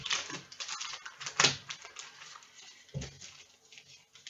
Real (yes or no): yes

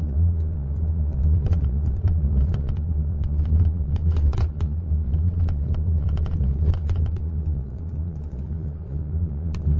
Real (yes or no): no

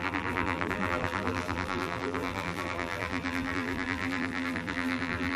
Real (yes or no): no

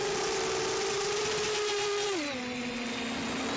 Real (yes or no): yes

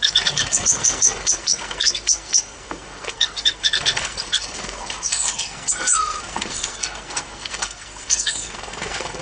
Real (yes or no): no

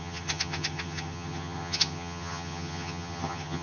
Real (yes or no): no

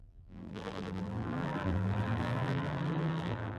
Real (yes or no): no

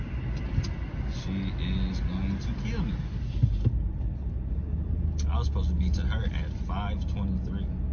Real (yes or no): yes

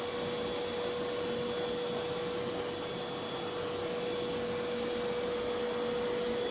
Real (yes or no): yes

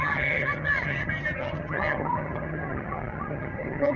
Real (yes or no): no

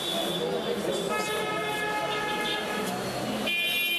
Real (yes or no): yes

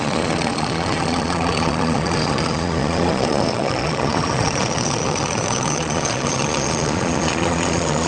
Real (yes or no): no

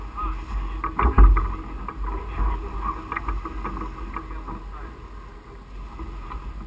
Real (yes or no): yes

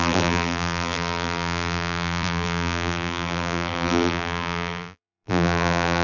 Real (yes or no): no